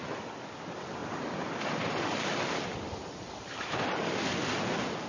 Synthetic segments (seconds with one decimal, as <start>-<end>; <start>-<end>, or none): 1.0-4.1